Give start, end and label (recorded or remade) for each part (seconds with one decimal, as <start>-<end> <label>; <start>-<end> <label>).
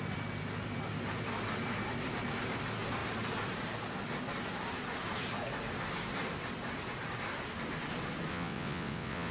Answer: 0.0-8.3 recorded; 8.3-9.3 remade